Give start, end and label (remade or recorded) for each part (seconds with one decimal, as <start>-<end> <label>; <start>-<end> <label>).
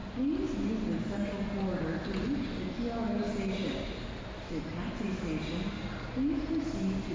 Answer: 0.0-7.1 recorded